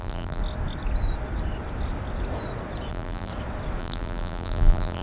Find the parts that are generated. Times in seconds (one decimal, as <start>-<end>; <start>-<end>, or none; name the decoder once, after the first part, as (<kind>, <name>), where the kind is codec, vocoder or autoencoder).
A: 0.0-0.4 (vocoder, BigVGAN v2); 2.9-3.3; 3.8-5.0